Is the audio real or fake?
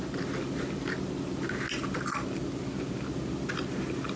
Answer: real